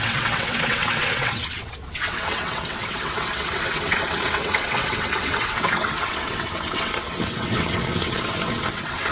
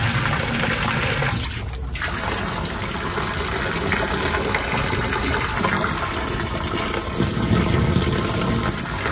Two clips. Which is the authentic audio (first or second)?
second